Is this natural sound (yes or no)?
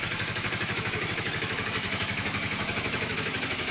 no